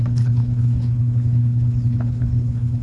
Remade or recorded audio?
remade